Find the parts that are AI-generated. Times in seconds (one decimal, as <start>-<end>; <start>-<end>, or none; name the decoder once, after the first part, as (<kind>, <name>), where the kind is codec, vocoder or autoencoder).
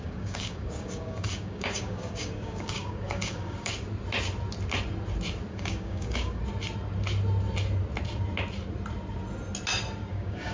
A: 0.0-3.7 (codec, DAC); 5.5-6.4; 10.1-10.5